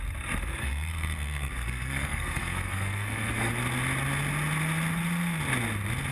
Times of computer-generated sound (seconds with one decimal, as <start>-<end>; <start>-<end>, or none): 0.6-3.5